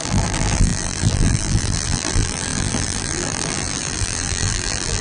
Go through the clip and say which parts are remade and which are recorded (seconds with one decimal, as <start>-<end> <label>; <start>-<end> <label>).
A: 0.0-5.0 remade